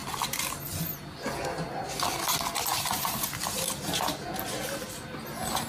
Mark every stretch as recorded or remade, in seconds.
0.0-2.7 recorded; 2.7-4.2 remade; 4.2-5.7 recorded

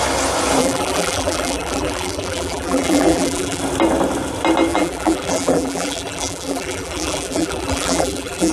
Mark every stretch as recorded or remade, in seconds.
0.0-0.6 recorded; 0.6-3.6 remade; 3.6-4.7 recorded; 4.7-8.5 remade

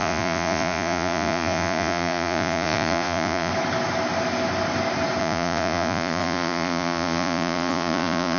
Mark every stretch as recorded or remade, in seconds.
0.0-3.5 remade; 3.5-5.2 recorded; 5.2-8.4 remade

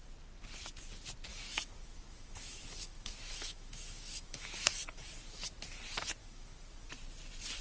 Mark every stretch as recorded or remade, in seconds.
0.0-1.3 recorded; 1.3-5.1 remade; 5.1-6.2 recorded; 6.2-6.9 remade; 6.9-7.6 recorded

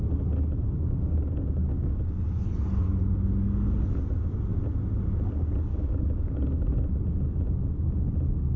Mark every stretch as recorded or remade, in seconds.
0.0-0.8 recorded; 0.8-2.0 remade; 2.0-5.7 recorded; 5.7-6.7 remade; 6.7-8.6 recorded

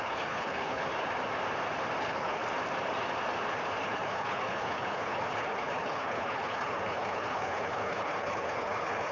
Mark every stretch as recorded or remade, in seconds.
0.0-0.9 remade; 0.9-2.0 recorded; 2.0-2.4 remade; 2.4-3.8 recorded; 3.8-9.1 remade

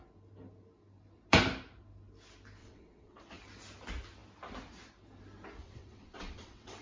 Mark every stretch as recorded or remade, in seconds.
0.0-2.6 recorded; 2.6-3.4 remade; 3.4-5.6 recorded; 5.6-6.8 remade